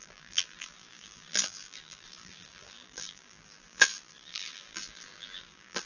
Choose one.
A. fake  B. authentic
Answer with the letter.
A